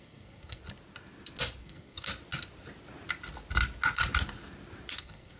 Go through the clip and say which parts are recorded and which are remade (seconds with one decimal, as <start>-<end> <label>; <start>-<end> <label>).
0.0-0.6 remade; 0.6-1.6 recorded; 1.6-2.1 remade; 2.1-5.0 recorded; 5.0-5.4 remade